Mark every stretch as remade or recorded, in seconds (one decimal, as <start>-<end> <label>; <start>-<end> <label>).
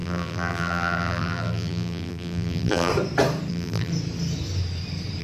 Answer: 0.0-2.9 remade; 2.9-3.5 recorded; 3.5-3.9 remade; 3.9-5.2 recorded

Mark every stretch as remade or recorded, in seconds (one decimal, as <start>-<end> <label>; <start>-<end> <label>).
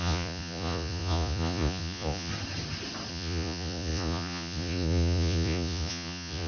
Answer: 0.0-2.3 remade; 2.3-3.1 recorded; 3.1-6.5 remade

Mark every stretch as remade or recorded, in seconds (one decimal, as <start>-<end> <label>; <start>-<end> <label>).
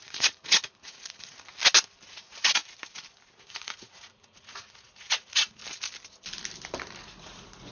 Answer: 0.0-1.5 remade; 1.5-2.1 recorded; 2.1-2.6 remade; 2.6-3.4 recorded; 3.4-5.6 remade; 5.6-7.0 recorded; 7.0-7.7 remade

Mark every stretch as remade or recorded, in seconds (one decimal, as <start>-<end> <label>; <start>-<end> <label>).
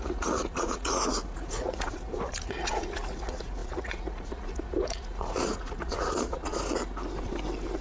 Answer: 0.0-6.5 remade; 6.5-7.8 recorded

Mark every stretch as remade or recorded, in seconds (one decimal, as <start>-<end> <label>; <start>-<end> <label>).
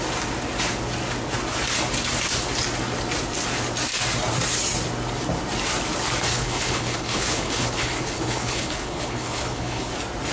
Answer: 0.0-6.3 recorded; 6.3-9.9 remade; 9.9-10.3 recorded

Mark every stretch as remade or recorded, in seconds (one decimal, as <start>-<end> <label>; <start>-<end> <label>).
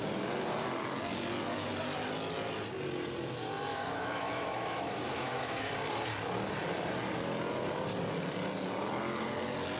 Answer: 0.0-3.7 recorded; 3.7-5.7 remade; 5.7-9.8 recorded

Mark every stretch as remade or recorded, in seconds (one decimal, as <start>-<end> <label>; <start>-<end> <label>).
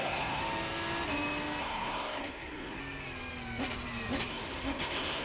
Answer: 0.0-0.4 remade; 0.4-1.6 recorded; 1.6-2.8 remade; 2.8-4.3 recorded; 4.3-5.2 remade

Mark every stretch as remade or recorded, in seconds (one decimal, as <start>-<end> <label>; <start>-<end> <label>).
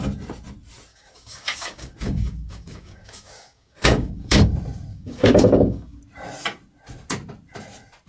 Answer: 0.0-0.9 recorded; 0.9-4.5 remade; 4.5-4.9 recorded; 4.9-6.0 remade; 6.0-8.1 recorded